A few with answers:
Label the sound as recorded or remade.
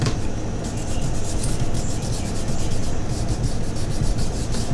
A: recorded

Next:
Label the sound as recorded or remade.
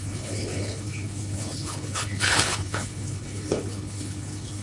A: remade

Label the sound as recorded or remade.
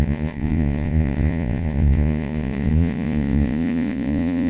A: remade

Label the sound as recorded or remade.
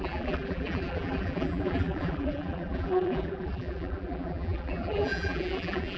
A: remade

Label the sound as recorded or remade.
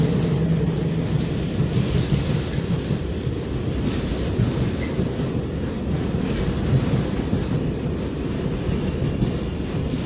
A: recorded